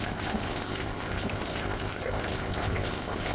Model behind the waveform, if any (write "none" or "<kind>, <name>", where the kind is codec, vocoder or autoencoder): codec, ZipCodec